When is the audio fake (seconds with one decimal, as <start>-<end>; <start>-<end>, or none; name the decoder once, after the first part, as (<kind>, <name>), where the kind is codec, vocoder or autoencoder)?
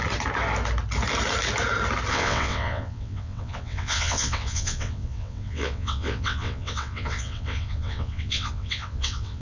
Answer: 2.1-9.4 (vocoder, WaveNeXt)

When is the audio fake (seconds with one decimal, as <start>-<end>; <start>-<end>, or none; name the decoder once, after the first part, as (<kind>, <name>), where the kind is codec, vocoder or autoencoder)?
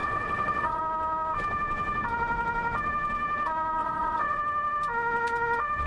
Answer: 0.0-0.8 (vocoder, WaveNeXt); 3.8-4.4